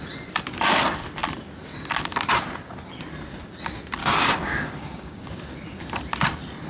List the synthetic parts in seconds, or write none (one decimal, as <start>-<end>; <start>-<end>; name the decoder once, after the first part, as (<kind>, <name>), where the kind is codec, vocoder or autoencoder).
4.0-5.3 (codec, DAC)